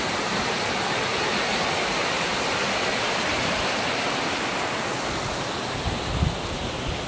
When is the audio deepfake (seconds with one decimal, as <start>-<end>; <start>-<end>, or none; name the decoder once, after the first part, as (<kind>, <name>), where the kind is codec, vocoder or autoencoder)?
none